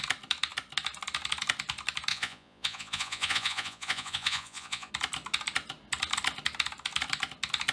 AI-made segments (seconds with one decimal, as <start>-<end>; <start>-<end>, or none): 2.1-4.9